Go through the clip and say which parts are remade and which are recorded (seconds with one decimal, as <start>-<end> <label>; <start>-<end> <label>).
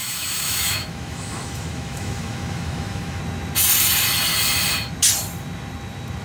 0.0-3.2 remade; 3.2-6.2 recorded